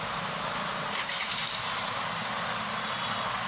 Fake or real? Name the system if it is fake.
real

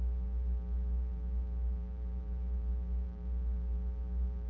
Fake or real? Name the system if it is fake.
fake, vocoder, BigVGAN v2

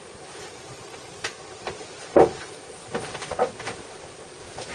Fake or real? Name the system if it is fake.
fake, vocoder, BigVGAN v2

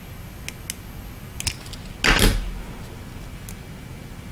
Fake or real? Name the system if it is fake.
real